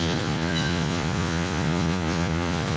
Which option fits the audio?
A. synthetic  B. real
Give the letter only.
A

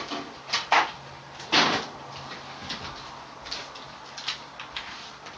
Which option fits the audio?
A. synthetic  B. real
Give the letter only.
B